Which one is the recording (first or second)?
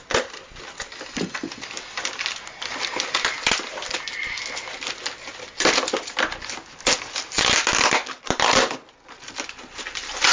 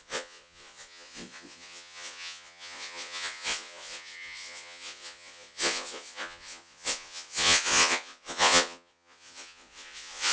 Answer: first